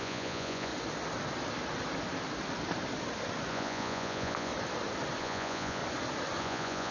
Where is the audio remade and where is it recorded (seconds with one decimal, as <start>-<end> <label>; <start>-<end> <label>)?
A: 0.0-0.7 remade; 0.7-3.5 recorded; 3.5-4.5 remade; 4.5-5.2 recorded; 5.2-5.8 remade; 5.8-6.4 recorded; 6.4-6.9 remade